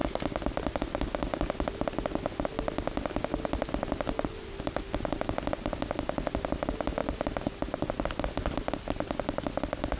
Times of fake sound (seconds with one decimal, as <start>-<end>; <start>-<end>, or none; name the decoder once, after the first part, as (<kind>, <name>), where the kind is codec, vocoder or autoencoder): none